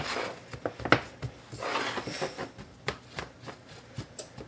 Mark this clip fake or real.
real